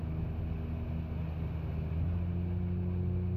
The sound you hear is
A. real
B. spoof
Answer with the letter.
A